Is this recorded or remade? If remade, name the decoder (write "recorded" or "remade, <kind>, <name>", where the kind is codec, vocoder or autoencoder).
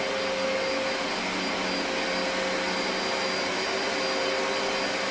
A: recorded